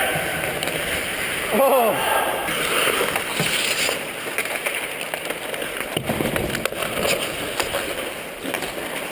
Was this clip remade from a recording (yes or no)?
no